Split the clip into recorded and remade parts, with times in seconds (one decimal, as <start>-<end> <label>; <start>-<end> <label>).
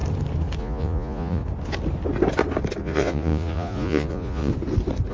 0.0-0.6 recorded; 0.6-1.4 remade; 1.4-2.8 recorded; 2.8-4.5 remade; 4.5-5.1 recorded